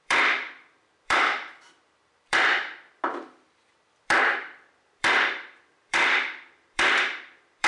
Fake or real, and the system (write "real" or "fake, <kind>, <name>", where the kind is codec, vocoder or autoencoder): fake, vocoder, BigVGAN v2